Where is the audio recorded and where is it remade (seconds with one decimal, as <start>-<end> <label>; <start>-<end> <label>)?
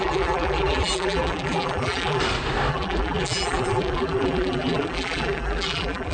0.0-2.2 remade; 2.2-2.7 recorded; 2.7-6.1 remade